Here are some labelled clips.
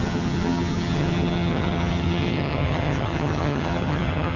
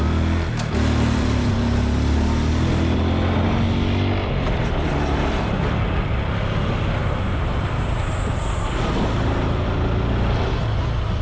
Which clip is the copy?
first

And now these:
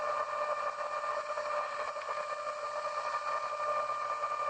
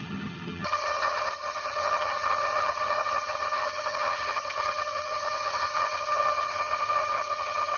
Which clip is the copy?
second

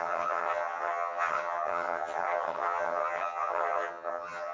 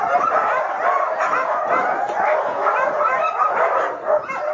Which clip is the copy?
first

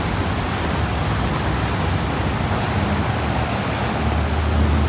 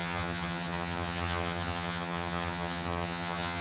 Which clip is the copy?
second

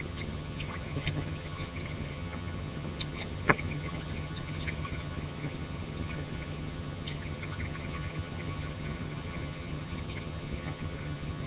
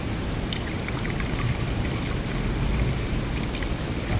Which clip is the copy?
first